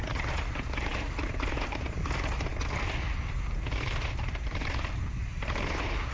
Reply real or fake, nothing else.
real